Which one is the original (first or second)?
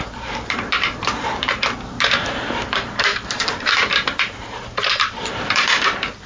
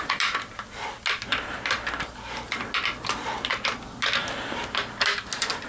second